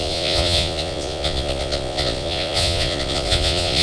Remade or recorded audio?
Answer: remade